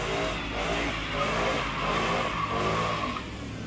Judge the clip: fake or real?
real